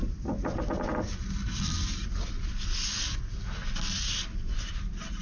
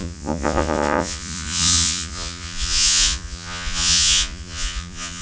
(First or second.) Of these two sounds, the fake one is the second